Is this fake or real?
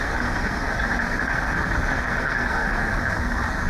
fake